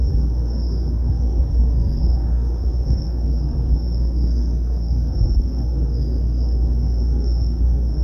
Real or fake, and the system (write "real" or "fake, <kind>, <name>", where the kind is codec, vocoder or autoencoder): fake, codec, SNAC